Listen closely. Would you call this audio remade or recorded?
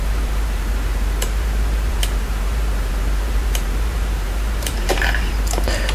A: remade